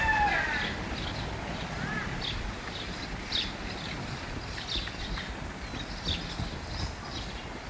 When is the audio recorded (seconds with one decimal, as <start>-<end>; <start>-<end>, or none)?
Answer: 0.0-7.7